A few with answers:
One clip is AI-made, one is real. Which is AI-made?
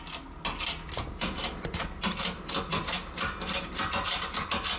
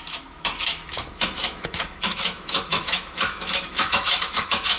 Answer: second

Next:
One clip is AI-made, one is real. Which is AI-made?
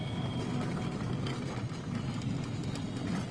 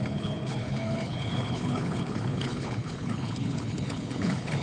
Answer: second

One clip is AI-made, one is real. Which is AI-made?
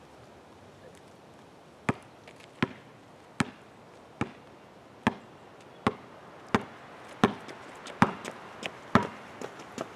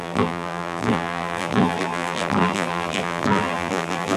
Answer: second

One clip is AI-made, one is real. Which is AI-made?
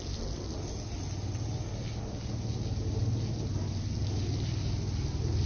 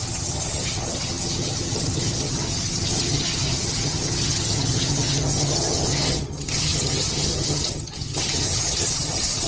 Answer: second